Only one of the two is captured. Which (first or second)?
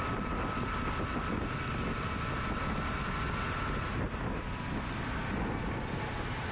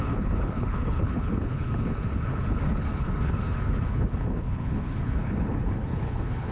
first